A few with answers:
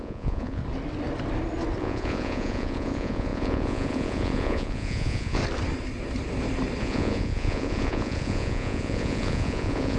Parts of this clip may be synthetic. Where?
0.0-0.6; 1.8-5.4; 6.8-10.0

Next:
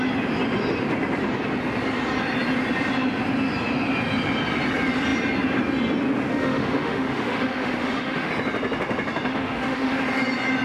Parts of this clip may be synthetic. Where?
6.3-8.3; 9.3-10.0

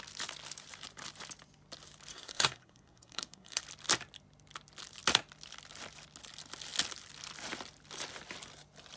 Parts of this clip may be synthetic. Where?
2.1-3.6

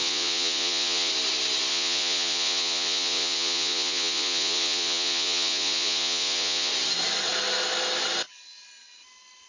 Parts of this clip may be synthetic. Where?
0.0-1.1; 1.7-6.7

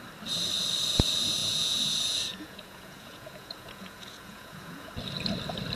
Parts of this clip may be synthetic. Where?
1.4-4.9